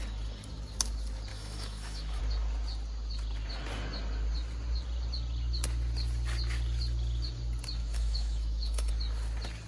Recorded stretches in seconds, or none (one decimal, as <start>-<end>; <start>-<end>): 0.0-1.3; 2.2-7.8; 8.9-9.7